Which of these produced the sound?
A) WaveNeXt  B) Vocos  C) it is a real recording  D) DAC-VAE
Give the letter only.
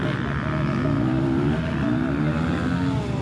C